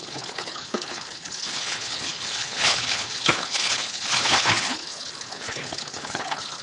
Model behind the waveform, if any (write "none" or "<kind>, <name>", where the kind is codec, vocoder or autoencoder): codec, HILCodec